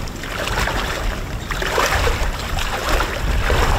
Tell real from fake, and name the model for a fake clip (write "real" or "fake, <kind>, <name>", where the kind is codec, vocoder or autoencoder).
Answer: real